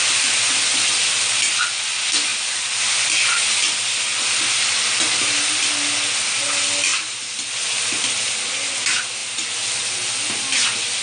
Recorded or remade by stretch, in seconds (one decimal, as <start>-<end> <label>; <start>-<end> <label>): 0.0-2.3 recorded; 2.3-3.4 remade; 3.4-6.9 recorded; 6.9-7.8 remade; 7.8-11.0 recorded